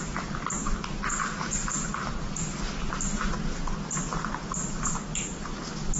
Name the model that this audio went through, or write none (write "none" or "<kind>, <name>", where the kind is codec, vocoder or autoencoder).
none